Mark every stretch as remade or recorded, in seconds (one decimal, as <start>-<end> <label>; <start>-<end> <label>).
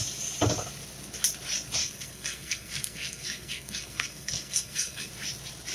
0.0-1.8 recorded; 1.8-5.1 remade; 5.1-5.7 recorded